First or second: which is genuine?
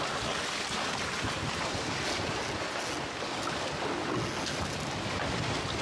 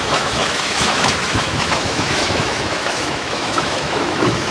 first